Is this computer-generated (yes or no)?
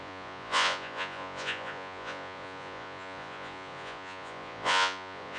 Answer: yes